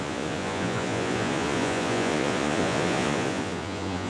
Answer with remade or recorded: remade